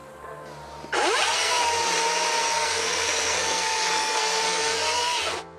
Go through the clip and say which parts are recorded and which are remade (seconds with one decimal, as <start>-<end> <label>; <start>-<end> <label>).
0.0-1.2 recorded; 1.2-1.6 remade; 1.6-2.4 recorded; 2.4-5.6 remade